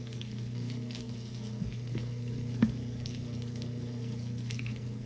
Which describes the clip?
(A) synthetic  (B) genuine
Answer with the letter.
A